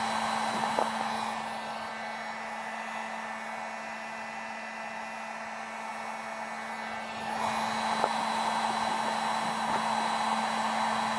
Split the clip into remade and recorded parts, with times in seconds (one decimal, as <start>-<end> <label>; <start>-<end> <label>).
0.0-11.2 recorded